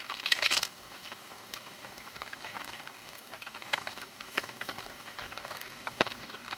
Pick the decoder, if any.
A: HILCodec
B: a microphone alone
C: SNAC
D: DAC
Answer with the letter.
D